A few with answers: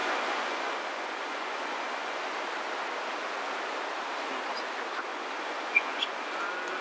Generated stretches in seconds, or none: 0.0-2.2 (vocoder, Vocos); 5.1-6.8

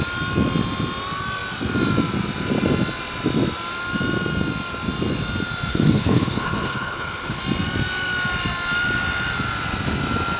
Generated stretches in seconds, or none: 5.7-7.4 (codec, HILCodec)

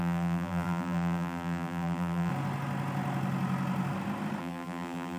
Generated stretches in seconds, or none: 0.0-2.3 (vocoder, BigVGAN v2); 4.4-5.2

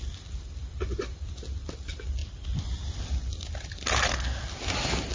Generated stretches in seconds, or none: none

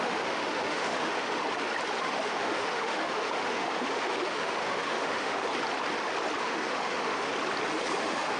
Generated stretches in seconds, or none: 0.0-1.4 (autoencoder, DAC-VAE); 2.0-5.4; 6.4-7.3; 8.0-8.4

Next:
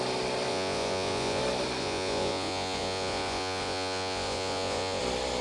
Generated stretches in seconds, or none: 0.5-1.4 (vocoder, Vocos); 1.8-5.0